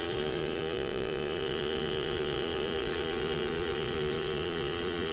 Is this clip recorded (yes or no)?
no